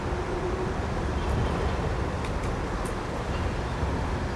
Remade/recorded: recorded